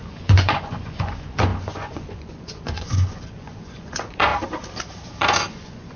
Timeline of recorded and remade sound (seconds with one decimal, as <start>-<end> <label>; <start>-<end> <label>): 0.0-4.3 remade; 4.3-5.2 recorded; 5.2-6.0 remade